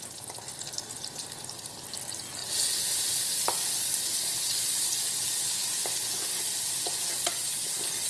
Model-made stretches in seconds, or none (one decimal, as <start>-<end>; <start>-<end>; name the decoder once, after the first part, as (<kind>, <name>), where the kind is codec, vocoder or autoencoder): none